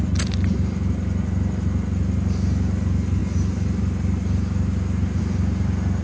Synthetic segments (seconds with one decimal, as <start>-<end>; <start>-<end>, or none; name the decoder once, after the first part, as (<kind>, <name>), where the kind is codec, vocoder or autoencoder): none